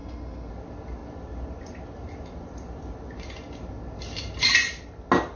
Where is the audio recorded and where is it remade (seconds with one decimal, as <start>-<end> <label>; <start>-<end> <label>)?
0.0-0.5 remade; 0.5-5.4 recorded